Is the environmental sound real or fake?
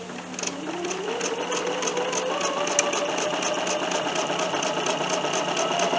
real